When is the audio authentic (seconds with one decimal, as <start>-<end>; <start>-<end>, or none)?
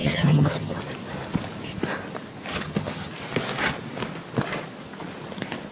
0.8-2.5; 3.1-5.7